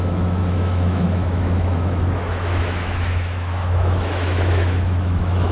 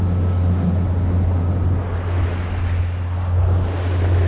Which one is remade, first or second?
first